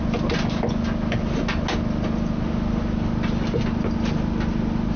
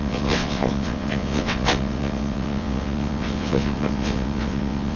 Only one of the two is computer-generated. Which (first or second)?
second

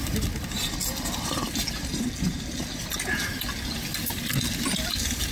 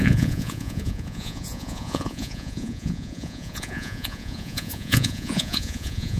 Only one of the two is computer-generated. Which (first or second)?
second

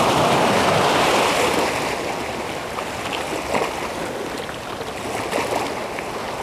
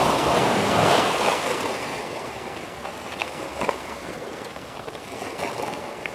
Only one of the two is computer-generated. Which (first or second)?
second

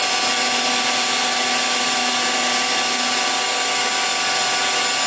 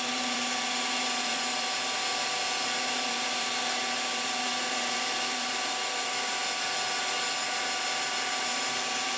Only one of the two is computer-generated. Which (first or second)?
second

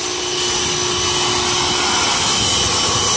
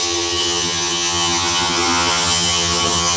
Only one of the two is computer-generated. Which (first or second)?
second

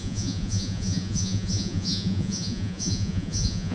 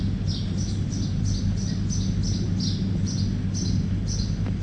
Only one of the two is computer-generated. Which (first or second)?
first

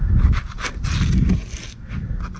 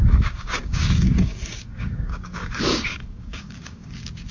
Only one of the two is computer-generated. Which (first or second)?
second